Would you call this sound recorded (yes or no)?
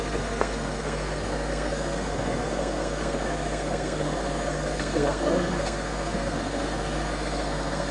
no